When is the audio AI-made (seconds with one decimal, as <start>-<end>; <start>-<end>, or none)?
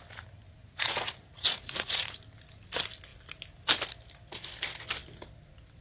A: 0.6-2.2